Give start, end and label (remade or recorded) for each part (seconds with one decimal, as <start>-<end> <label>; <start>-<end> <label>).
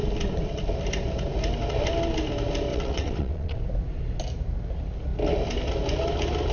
0.0-2.7 recorded; 2.7-3.6 remade; 3.6-6.5 recorded